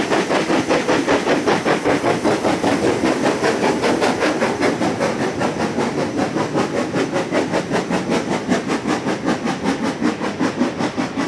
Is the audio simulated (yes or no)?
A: no